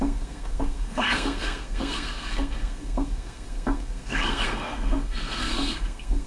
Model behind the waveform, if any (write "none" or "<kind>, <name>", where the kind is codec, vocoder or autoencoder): codec, SNAC